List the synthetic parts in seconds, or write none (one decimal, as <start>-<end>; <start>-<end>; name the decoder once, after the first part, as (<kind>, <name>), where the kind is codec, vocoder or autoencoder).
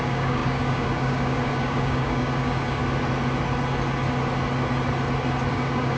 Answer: 0.0-2.8 (codec, DAC); 5.5-6.0